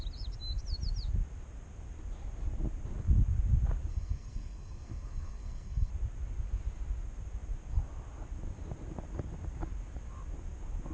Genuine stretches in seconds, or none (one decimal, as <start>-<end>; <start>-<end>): 0.0-3.9; 5.9-10.9